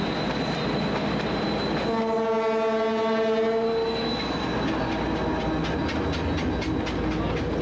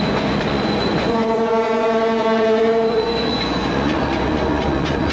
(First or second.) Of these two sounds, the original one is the first